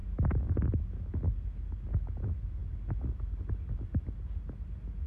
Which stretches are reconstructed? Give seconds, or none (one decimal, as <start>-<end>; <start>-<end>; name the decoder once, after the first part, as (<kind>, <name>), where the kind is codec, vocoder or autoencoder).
none